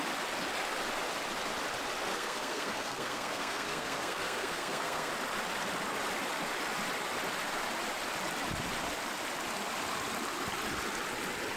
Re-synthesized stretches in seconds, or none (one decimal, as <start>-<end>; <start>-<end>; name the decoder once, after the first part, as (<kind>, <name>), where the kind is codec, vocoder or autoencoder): 2.1-5.1 (codec, SNAC)